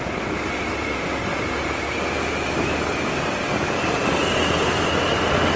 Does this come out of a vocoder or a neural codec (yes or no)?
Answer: no